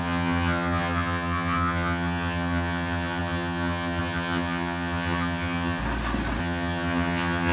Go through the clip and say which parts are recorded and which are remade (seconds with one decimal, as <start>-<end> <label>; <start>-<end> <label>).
0.0-5.8 remade; 5.8-6.4 recorded; 6.4-7.5 remade